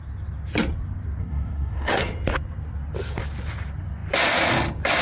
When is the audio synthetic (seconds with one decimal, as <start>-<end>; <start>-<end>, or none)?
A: 1.2-1.9